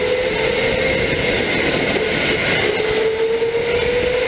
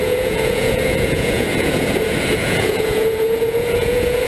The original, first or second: first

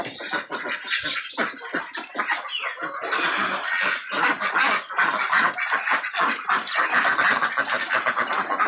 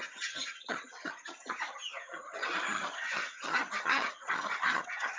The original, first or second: first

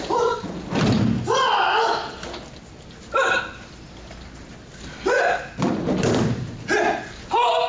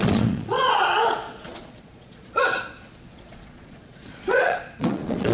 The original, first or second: first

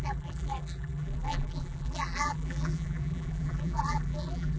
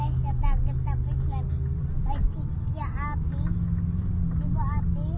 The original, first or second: second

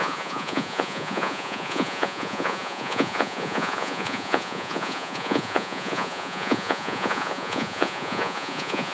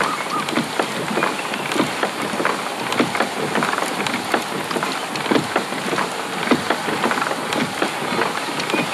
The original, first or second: second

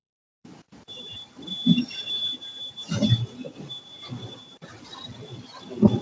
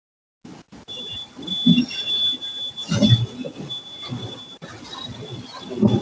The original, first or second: second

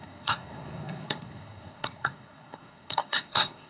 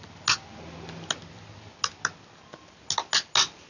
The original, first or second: second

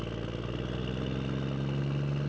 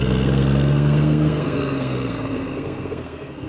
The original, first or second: first